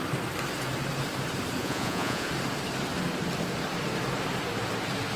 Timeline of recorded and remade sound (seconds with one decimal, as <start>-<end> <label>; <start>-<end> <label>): 0.0-1.6 recorded; 1.6-2.3 remade; 2.3-5.2 recorded

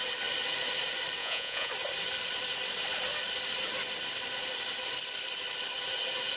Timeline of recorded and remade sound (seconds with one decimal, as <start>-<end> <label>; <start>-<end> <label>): 0.0-1.2 recorded; 1.2-1.7 remade; 1.7-6.4 recorded